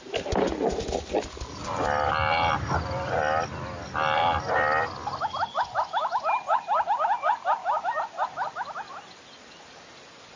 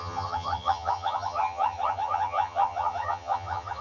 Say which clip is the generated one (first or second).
second